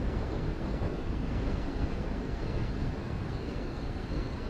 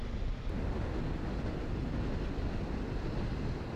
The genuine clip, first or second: second